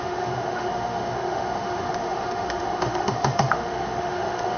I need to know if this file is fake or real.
fake